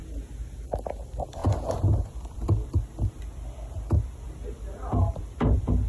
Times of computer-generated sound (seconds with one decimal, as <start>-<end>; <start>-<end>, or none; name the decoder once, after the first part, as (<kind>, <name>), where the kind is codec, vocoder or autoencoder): 0.7-5.9 (vocoder, BigVGAN v2)